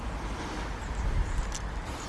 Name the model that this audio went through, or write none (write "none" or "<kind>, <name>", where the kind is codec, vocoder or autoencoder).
none